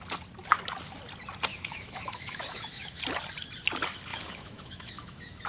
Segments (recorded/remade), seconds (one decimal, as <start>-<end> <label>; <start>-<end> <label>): 0.0-1.5 recorded; 1.5-3.0 remade; 3.0-4.1 recorded; 4.1-5.5 remade